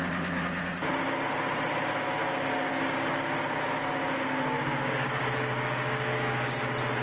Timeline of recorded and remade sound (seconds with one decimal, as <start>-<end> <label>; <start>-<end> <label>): 0.0-2.2 recorded; 2.2-3.1 remade; 3.1-4.6 recorded; 4.6-6.6 remade; 6.6-7.0 recorded